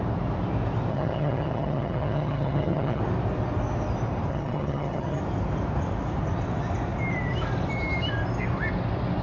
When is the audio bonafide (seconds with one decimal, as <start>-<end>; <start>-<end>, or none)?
0.0-0.9; 3.0-4.3; 5.2-9.2

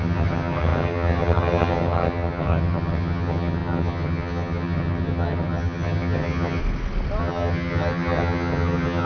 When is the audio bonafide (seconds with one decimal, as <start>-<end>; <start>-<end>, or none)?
6.6-7.2

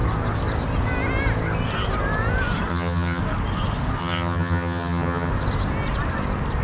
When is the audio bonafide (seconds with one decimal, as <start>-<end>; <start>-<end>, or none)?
0.0-2.7; 3.2-4.0; 5.3-6.6

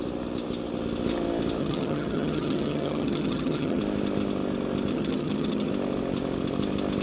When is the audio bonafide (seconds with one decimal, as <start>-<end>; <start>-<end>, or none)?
0.0-1.6; 3.8-4.9; 5.7-7.0

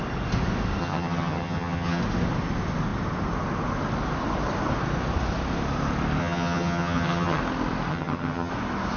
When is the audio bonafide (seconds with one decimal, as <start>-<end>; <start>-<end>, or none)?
0.0-0.8; 2.0-6.2; 7.4-7.9; 8.5-9.0